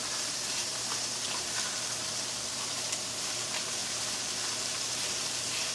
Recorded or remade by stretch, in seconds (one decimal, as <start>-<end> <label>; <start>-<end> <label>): 0.0-3.8 remade; 3.8-4.6 recorded; 4.6-5.7 remade